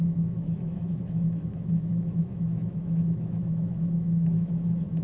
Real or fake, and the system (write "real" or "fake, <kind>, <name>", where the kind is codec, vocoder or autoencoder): fake, autoencoder, DAC-VAE